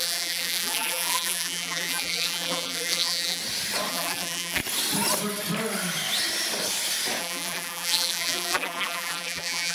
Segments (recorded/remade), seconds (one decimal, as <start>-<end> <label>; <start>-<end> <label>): 0.0-3.4 remade; 3.4-3.9 recorded; 3.9-4.6 remade; 4.6-7.2 recorded; 7.2-9.7 remade